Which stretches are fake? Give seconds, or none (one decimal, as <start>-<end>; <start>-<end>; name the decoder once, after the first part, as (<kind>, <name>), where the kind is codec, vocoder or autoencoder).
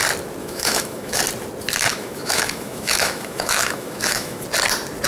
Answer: 0.4-1.2 (autoencoder, DAC-VAE); 1.9-4.4